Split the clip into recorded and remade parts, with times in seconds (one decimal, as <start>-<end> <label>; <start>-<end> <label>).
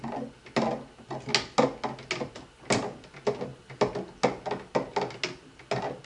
0.0-6.1 recorded